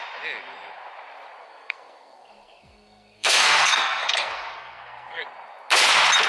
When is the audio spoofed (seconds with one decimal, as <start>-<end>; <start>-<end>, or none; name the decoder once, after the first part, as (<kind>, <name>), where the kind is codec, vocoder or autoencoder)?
1.4-5.2 (codec, SNAC)